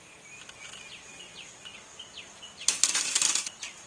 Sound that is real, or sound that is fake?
real